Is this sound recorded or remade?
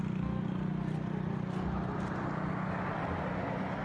recorded